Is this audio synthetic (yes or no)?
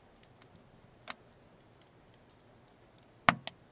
no